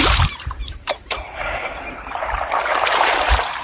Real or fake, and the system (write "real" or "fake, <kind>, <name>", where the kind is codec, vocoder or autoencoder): fake, vocoder, BigVGAN v2